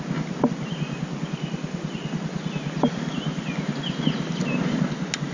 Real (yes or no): yes